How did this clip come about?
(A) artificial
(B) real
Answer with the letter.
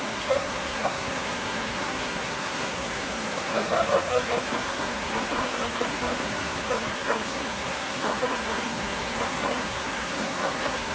A